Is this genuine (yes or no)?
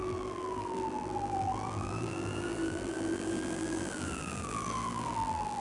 no